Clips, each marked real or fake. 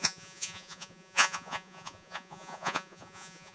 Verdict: fake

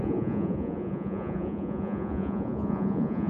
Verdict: fake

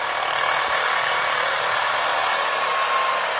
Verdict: real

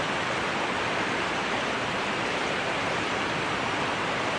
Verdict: real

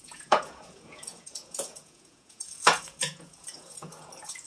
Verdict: fake